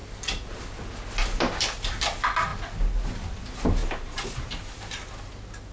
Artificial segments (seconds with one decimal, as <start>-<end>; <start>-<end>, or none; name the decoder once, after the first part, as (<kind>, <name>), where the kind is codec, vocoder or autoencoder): 3.8-4.8 (vocoder, BigVGAN v2)